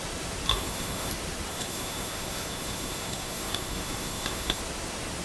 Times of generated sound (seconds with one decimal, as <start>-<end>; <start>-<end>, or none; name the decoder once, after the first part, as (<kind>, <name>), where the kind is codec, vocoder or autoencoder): 0.5-1.1 (codec, SNAC); 1.5-4.6